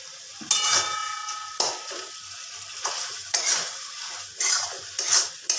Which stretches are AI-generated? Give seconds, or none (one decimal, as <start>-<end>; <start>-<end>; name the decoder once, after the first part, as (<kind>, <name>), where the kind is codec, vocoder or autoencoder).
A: none